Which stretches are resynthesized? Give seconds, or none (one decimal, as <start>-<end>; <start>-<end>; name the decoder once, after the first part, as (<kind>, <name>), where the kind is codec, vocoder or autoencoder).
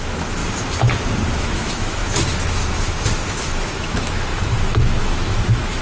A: 0.0-0.4 (autoencoder, DAC-VAE); 1.4-5.8